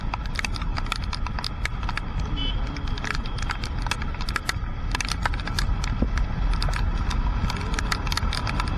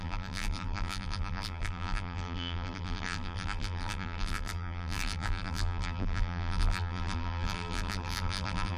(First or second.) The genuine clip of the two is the first